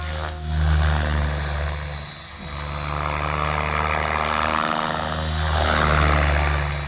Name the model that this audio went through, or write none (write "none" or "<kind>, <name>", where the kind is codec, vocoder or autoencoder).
none